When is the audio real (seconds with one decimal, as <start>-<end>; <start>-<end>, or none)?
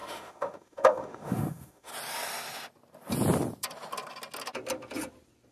1.9-5.5